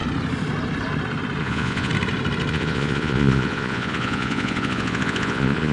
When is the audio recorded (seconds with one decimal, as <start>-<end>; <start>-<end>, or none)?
0.0-1.4; 1.9-2.5